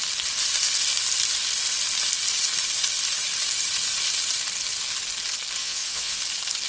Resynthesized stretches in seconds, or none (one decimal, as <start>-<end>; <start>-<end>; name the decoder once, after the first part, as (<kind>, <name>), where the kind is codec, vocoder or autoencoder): 5.6-6.2 (vocoder, Vocos)